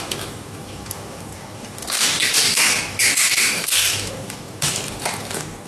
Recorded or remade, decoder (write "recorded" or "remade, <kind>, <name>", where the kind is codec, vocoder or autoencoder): remade, codec, DAC